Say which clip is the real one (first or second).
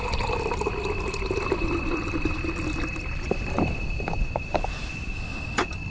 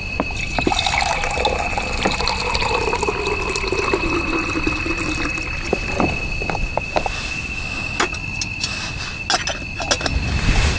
second